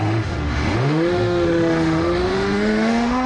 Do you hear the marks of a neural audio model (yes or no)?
yes